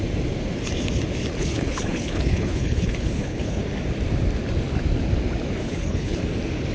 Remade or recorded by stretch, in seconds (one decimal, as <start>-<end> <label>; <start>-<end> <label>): 0.0-1.4 recorded; 1.4-3.6 remade; 3.6-5.6 recorded; 5.6-6.2 remade; 6.2-6.7 recorded